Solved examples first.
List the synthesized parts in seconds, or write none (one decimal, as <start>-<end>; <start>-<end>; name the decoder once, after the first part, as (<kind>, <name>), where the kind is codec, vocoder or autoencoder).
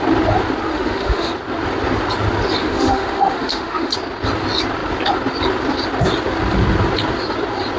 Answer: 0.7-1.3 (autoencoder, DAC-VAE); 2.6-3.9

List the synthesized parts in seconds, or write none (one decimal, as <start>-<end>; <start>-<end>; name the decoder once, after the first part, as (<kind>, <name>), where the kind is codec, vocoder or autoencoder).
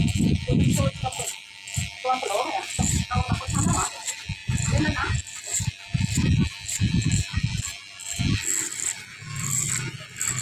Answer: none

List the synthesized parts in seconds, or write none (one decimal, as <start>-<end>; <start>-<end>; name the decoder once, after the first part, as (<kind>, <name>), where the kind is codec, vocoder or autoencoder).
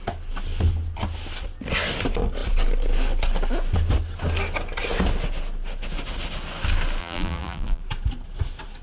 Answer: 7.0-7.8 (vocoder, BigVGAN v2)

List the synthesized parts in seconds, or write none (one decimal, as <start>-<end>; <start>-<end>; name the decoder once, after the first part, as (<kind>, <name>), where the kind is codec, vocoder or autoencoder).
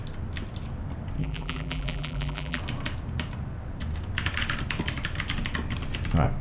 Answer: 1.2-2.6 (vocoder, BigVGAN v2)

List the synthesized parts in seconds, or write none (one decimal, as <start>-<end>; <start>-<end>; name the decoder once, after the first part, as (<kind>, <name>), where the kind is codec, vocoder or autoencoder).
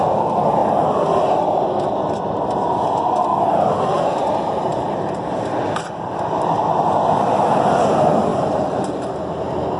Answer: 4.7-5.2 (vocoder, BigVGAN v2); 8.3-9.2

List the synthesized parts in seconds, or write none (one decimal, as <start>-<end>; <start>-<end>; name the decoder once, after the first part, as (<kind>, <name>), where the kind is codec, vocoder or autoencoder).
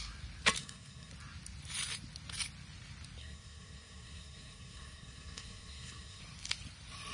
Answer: 0.6-1.1 (codec, SNAC); 3.2-6.2